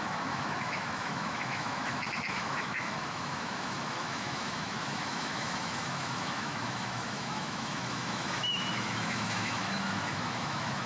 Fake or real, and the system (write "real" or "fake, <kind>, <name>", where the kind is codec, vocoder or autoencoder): fake, autoencoder, DAC-VAE